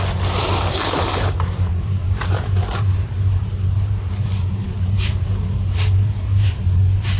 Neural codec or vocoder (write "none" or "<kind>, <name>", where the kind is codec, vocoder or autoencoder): vocoder, BigVGAN v2